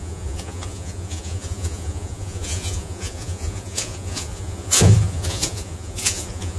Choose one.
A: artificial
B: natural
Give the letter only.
A